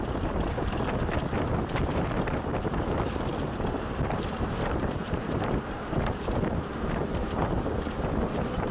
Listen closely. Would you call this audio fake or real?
fake